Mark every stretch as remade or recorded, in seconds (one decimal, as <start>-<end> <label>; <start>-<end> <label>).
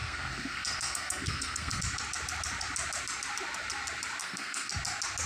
0.0-1.8 remade; 1.8-4.2 recorded; 4.2-4.7 remade; 4.7-5.3 recorded